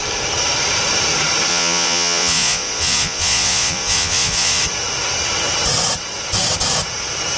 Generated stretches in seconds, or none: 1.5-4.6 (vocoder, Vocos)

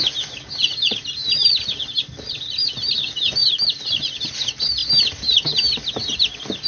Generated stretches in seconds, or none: none

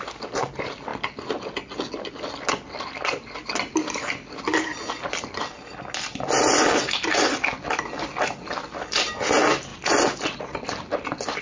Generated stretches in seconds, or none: none

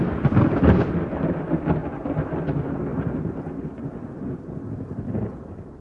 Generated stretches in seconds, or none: none